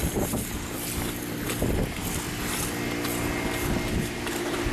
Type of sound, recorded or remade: recorded